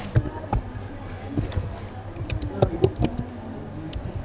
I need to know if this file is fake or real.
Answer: real